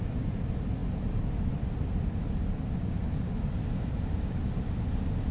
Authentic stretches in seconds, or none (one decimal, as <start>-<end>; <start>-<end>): 0.0-5.3